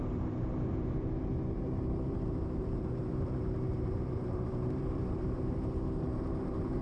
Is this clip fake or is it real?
fake